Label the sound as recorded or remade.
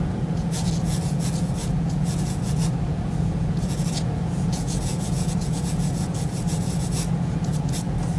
remade